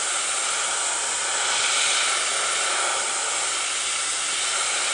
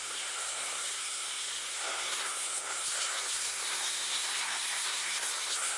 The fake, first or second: second